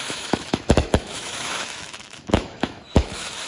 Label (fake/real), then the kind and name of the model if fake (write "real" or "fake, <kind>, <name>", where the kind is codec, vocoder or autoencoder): fake, autoencoder, DAC-VAE